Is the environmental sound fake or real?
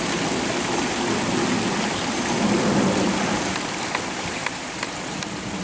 real